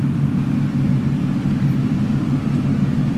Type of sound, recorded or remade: recorded